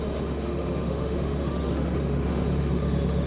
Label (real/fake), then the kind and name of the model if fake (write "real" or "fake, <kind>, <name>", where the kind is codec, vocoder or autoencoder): fake, autoencoder, DAC-VAE